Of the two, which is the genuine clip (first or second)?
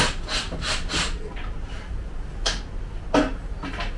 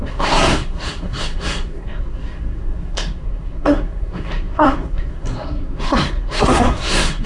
first